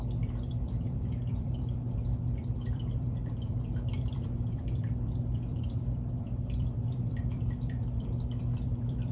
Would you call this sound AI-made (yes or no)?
yes